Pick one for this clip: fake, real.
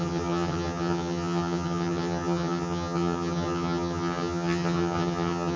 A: fake